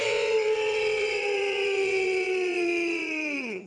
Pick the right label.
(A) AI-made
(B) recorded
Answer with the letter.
A